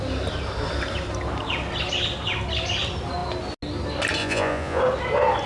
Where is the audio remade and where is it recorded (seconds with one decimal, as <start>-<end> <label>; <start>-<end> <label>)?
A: 0.0-4.2 recorded; 4.2-4.8 remade; 4.8-5.5 recorded